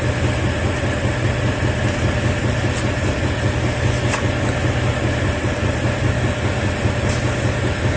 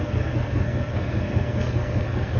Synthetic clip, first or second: second